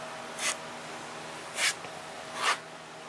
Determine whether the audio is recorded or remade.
recorded